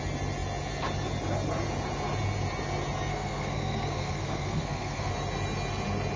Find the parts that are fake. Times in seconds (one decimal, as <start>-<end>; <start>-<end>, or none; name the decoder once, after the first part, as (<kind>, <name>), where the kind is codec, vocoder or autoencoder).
3.1-5.1 (codec, SNAC)

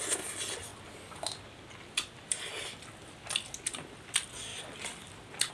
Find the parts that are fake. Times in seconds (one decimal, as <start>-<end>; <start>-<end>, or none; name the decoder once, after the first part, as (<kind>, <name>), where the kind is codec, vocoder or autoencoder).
none

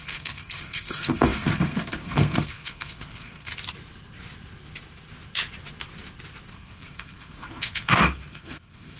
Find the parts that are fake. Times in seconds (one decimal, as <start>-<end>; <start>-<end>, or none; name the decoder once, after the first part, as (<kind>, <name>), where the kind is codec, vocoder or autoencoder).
0.0-3.5 (codec, SNAC); 6.5-9.0